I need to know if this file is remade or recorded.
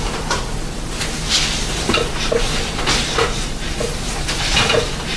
remade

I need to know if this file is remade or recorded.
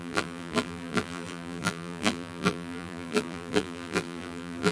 remade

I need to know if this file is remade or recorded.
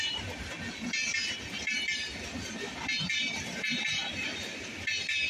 recorded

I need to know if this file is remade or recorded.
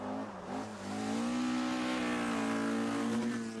recorded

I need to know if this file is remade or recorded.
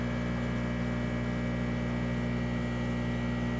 recorded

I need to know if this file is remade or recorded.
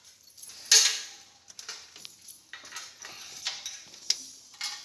recorded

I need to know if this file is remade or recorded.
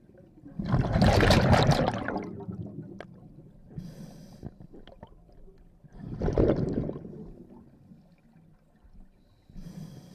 recorded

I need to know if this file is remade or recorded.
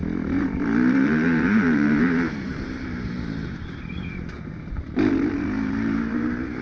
remade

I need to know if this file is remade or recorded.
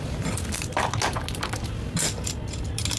recorded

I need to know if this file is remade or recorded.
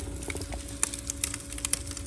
recorded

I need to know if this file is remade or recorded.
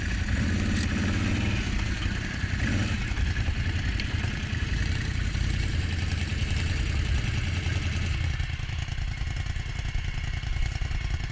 recorded